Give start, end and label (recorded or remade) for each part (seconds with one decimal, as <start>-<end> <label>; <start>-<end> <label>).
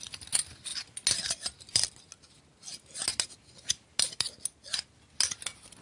0.0-5.8 recorded